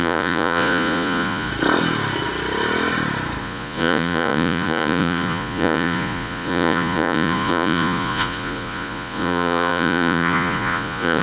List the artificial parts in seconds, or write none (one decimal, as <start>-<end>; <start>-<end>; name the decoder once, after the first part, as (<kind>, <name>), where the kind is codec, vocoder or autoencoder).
0.0-1.5 (vocoder, Vocos); 3.4-11.2